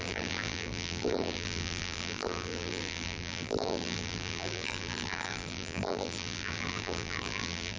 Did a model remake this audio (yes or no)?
yes